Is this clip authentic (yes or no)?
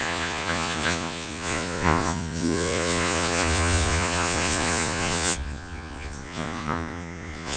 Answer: no